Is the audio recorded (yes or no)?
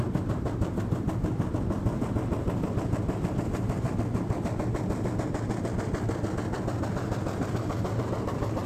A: yes